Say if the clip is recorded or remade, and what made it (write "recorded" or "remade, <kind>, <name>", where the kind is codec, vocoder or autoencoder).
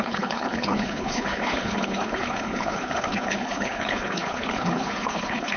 remade, codec, HILCodec